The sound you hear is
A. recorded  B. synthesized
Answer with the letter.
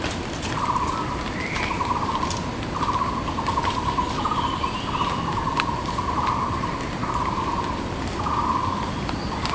A